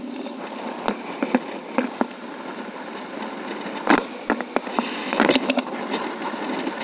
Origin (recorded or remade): recorded